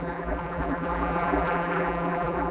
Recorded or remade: remade